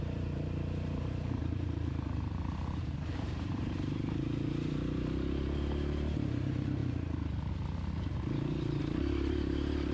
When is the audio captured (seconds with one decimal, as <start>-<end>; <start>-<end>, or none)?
6.8-8.8